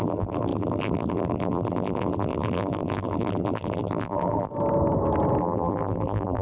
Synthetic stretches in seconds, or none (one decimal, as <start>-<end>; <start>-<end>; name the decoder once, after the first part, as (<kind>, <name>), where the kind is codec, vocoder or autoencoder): 0.0-4.5 (vocoder, BigVGAN v2); 5.4-6.4

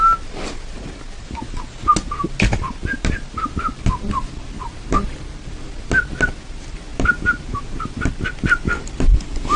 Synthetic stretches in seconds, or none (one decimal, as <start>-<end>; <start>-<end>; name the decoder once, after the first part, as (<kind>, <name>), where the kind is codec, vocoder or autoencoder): 2.8-5.9 (vocoder, BigVGAN v2); 6.9-8.3

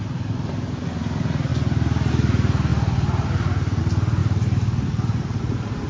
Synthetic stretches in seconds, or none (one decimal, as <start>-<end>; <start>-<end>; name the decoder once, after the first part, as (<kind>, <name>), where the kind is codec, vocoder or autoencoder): 1.5-2.1 (vocoder, BigVGAN v2); 2.7-3.8; 4.2-5.4

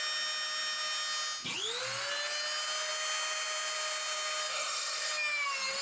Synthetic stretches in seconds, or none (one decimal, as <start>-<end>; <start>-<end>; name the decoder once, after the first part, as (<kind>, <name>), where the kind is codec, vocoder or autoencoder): 4.5-5.1 (codec, SNAC)

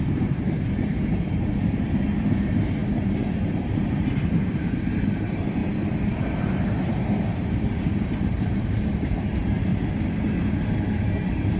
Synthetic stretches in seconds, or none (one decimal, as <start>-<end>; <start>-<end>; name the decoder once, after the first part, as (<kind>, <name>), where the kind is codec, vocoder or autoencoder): 0.0-5.6 (vocoder, BigVGAN v2); 6.2-9.7; 11.0-11.6

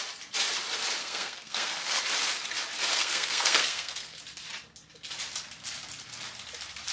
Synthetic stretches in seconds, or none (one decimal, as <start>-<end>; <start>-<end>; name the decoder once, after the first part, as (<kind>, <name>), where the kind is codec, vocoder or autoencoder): 1.0-2.0 (codec, SNAC); 2.9-4.2